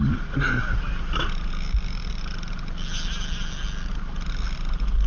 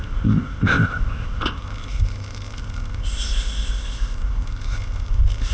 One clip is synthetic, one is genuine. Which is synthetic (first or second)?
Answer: second